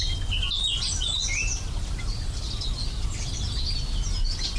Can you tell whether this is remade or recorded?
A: recorded